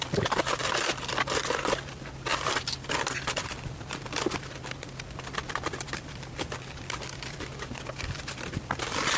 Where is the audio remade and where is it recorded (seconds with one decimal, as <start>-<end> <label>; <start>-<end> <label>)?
0.0-2.3 remade; 2.3-3.4 recorded; 3.4-9.2 remade